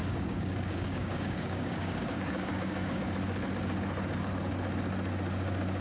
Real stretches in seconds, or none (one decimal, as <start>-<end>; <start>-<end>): 3.0-5.8